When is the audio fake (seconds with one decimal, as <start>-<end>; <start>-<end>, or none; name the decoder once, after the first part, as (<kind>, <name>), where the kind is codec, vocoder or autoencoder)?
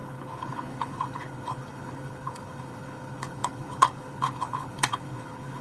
0.0-5.6 (codec, HILCodec)